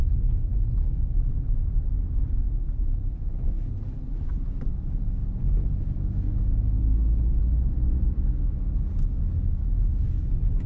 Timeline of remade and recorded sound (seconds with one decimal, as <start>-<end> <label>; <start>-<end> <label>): 0.0-10.7 recorded